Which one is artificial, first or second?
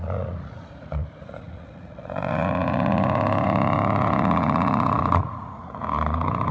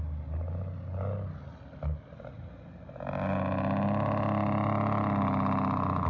first